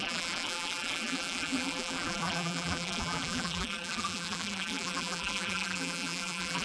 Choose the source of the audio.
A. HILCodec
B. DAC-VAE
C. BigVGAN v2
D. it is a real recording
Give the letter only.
C